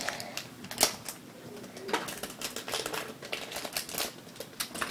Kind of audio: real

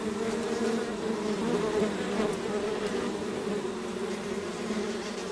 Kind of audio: fake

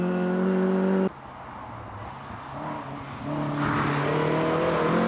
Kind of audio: real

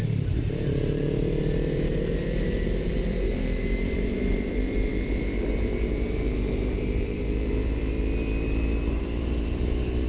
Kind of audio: fake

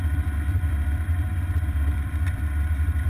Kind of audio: fake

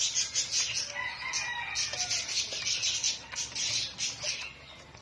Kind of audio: real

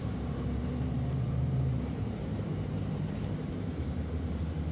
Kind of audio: fake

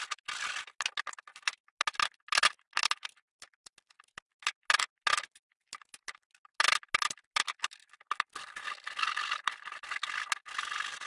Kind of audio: real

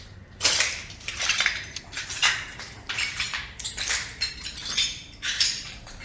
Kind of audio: fake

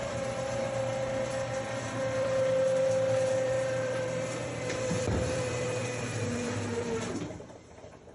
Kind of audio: fake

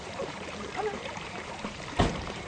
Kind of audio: fake